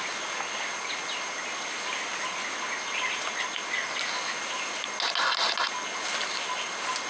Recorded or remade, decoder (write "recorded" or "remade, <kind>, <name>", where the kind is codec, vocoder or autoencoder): recorded